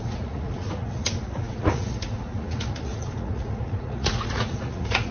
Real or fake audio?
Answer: fake